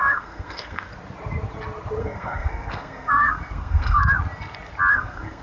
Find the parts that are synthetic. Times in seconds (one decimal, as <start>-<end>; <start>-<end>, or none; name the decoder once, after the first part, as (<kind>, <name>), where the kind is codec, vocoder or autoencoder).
0.0-0.9 (codec, SNAC); 2.0-4.0; 4.9-5.4